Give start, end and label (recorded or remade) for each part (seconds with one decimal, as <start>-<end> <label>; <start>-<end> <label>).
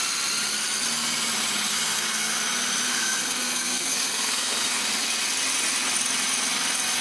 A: 0.0-1.7 recorded; 1.7-2.4 remade; 2.4-2.9 recorded; 2.9-4.8 remade; 4.8-7.0 recorded